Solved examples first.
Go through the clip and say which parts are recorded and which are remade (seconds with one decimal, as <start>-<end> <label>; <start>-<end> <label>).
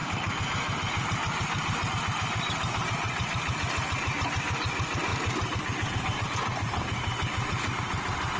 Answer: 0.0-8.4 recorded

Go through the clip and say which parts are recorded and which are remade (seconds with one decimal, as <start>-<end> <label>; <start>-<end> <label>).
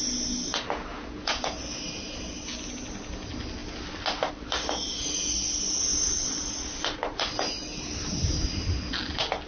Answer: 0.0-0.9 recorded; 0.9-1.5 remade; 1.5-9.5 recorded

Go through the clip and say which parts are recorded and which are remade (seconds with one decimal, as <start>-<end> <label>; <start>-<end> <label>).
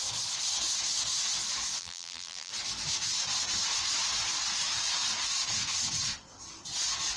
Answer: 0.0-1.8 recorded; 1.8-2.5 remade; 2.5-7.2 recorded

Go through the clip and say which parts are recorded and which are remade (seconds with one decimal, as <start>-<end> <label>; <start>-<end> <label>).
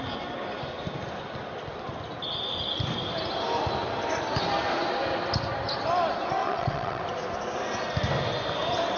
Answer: 0.0-6.4 recorded; 6.4-7.0 remade; 7.0-9.0 recorded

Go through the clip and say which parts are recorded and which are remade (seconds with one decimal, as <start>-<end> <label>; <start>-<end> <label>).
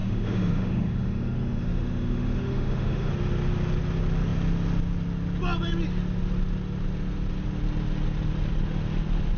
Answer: 0.0-3.1 remade; 3.1-9.4 recorded